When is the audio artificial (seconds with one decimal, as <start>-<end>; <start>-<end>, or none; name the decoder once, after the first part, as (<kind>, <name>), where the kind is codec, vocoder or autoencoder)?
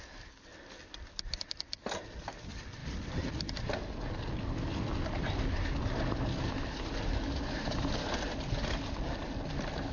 none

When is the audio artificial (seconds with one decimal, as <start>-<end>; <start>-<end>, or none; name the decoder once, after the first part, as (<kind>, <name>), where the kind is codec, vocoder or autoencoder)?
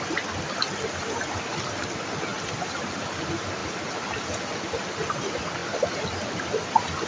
2.3-2.8 (vocoder, BigVGAN v2); 5.6-6.5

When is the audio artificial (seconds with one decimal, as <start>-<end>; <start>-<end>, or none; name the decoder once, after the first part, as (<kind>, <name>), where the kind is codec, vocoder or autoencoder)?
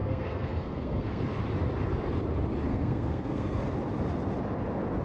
0.0-1.2 (codec, SNAC); 2.7-3.6